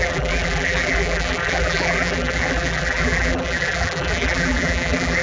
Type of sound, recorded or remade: remade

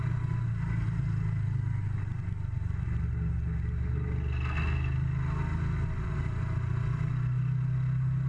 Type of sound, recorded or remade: recorded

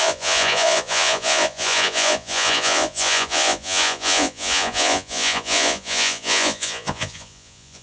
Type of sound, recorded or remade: remade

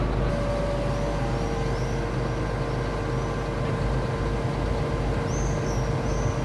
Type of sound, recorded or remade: recorded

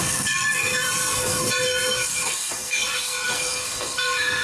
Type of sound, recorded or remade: remade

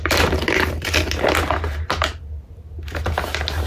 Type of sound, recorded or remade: recorded